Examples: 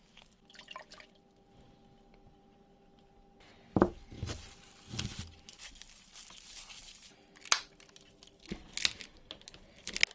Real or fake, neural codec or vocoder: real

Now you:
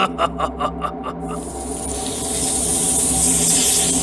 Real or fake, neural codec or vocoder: real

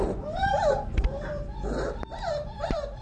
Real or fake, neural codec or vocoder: fake, vocoder, BigVGAN v2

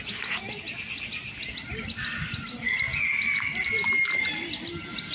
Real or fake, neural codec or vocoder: real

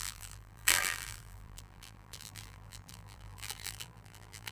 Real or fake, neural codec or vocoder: fake, vocoder, BigVGAN v2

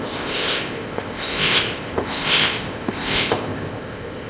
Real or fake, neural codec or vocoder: fake, codec, ZipCodec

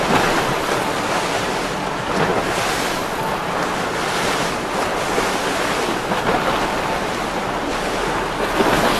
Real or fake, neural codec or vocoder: real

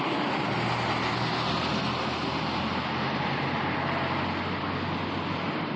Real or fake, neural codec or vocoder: real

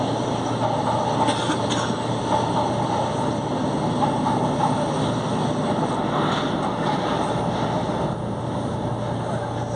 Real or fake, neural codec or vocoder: real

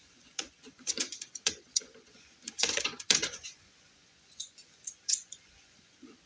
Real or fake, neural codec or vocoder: fake, vocoder, Vocos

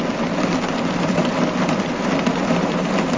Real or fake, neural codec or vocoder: real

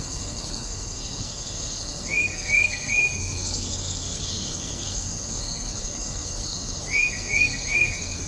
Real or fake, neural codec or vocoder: fake, codec, SNAC